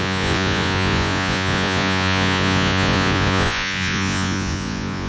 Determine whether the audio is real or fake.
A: fake